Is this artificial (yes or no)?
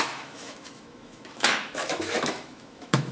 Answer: yes